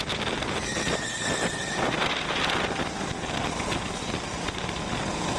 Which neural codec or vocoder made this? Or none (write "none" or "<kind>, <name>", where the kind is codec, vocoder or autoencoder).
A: none